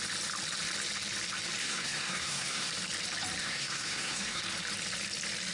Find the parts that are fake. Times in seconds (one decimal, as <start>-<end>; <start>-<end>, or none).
1.6-2.7; 3.4-4.4